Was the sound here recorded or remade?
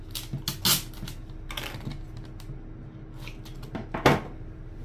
recorded